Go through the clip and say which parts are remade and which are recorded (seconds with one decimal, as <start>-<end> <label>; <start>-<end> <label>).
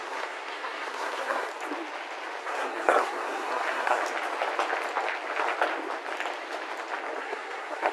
0.0-1.5 remade; 1.5-2.4 recorded; 2.4-4.0 remade; 4.0-7.2 recorded; 7.2-7.9 remade